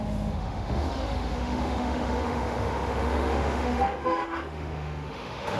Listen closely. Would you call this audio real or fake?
fake